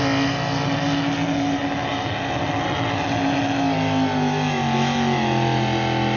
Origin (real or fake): real